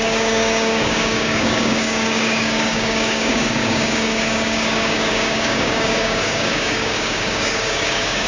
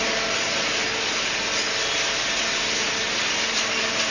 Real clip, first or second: second